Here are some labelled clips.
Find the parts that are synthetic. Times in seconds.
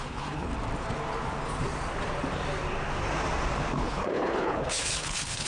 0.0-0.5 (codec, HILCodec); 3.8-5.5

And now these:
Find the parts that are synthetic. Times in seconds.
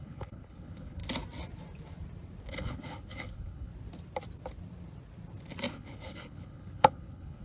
0.0-1.0 (codec, HILCodec); 2.5-3.7; 5.7-7.4